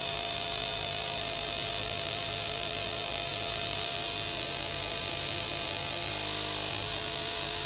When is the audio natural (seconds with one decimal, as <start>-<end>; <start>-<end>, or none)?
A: 6.1-6.7